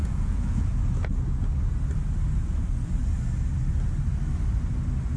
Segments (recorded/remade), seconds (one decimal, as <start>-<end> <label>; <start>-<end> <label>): 0.0-0.8 remade; 0.8-5.2 recorded